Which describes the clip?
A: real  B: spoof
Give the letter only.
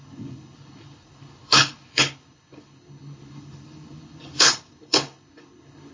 B